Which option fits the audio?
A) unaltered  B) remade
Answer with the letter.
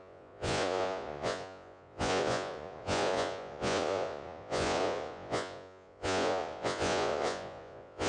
B